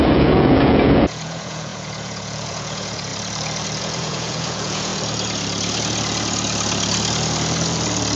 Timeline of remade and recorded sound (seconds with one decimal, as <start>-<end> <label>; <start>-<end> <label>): 0.0-3.1 remade; 3.1-3.8 recorded; 3.8-4.9 remade; 4.9-8.2 recorded

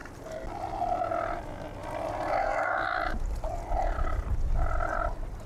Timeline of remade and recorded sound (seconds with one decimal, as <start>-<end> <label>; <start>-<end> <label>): 0.0-5.5 recorded